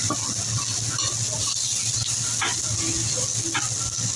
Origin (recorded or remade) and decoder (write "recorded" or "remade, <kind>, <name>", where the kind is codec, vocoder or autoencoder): recorded